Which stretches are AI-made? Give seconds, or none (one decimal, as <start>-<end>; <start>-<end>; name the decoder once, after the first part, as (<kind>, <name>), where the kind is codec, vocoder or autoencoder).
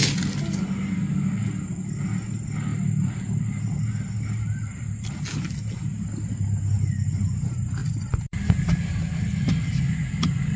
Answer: 2.7-5.1 (vocoder, BigVGAN v2); 7.8-10.6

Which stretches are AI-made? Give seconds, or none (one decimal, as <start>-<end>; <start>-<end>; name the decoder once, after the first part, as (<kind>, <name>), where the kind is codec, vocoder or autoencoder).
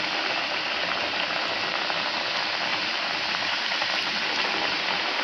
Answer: 2.7-4.1 (vocoder, BigVGAN v2)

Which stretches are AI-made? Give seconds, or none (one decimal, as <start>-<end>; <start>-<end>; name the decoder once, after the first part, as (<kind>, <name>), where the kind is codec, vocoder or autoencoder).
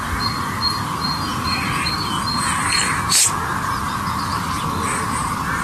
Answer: none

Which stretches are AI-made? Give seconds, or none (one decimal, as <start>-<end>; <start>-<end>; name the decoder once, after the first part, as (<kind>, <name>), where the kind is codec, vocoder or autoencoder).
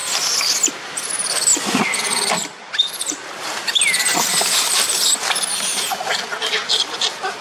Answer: 1.5-5.9 (vocoder, BigVGAN v2)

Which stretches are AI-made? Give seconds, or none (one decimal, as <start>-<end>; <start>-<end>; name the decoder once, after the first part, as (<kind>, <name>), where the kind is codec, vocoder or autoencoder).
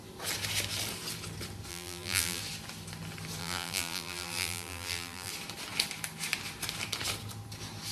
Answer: 1.7-2.4 (vocoder, BigVGAN v2); 3.4-5.3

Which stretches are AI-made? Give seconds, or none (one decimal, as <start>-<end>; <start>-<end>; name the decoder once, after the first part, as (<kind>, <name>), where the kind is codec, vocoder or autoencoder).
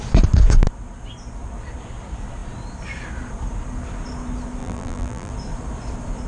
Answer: 4.6-5.3 (vocoder, BigVGAN v2)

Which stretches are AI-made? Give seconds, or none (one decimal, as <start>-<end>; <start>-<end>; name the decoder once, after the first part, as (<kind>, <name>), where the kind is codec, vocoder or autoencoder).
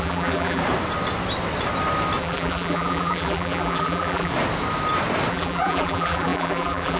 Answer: 0.0-0.6 (vocoder, BigVGAN v2); 2.2-4.3; 5.3-7.0